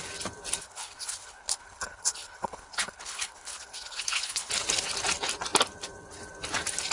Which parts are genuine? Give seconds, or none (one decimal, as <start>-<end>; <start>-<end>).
0.0-0.6; 4.5-6.9